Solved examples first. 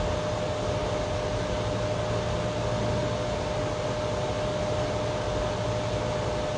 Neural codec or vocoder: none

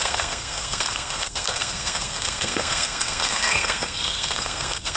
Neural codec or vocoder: codec, SNAC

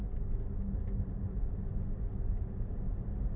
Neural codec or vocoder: none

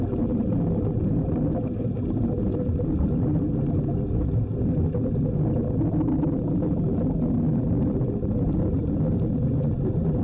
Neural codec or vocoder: none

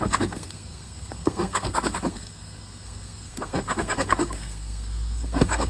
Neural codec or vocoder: codec, SNAC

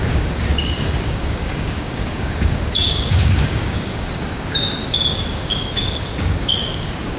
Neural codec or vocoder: codec, DAC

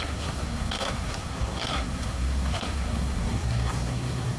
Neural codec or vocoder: codec, SNAC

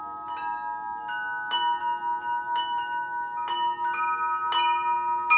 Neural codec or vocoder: none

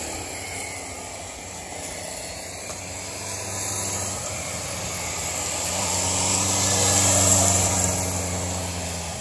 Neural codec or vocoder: none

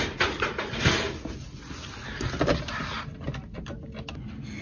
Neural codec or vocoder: none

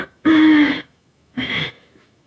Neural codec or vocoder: autoencoder, DAC-VAE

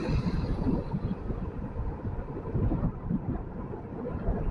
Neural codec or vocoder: vocoder, BigVGAN v2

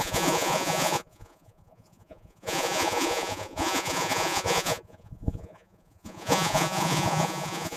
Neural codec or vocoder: vocoder, Vocos